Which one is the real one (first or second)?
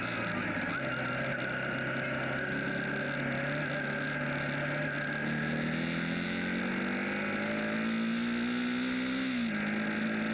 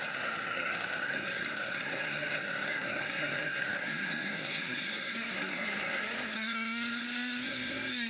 first